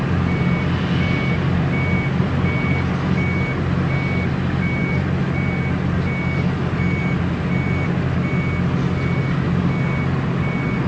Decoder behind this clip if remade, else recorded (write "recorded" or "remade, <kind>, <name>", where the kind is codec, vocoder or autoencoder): recorded